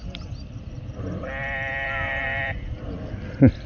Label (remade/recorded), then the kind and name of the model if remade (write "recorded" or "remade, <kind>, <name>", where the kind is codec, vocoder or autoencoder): remade, vocoder, BigVGAN v2